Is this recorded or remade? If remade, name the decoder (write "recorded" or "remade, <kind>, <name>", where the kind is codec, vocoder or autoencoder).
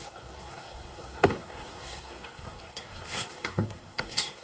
remade, codec, SNAC